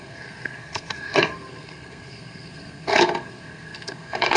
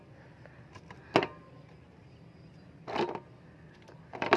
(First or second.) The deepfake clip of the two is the first